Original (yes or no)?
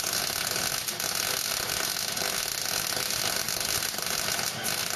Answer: yes